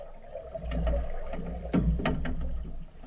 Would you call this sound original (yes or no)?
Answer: yes